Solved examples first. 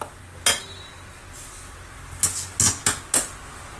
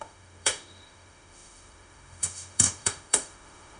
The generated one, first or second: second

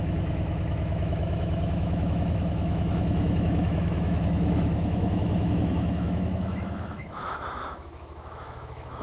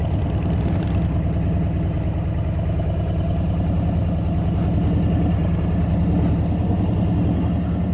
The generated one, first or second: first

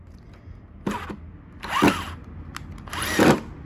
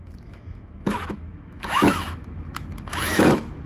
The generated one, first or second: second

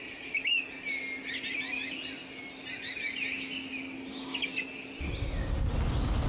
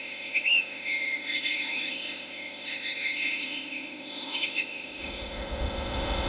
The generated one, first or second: second